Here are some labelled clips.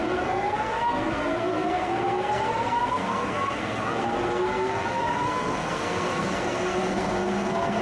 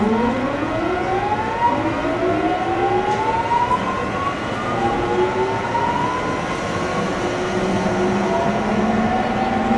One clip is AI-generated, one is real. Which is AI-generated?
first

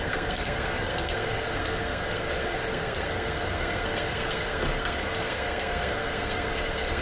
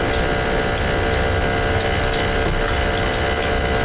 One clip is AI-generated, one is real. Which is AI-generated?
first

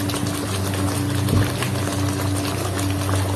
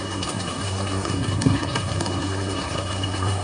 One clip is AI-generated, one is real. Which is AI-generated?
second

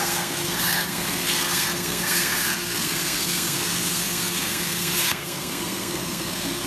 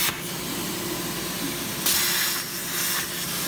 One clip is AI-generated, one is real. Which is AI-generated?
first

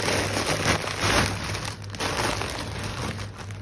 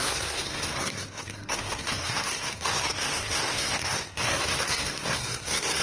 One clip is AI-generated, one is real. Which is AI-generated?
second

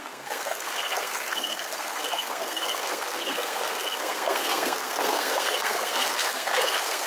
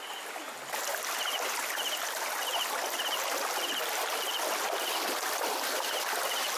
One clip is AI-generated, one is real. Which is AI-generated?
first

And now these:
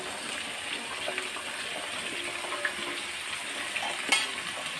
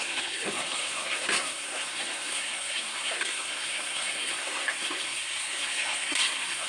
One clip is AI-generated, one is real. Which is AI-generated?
second